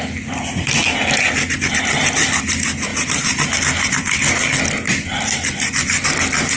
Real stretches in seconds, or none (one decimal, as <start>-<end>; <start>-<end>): 0.0-2.9; 3.6-6.6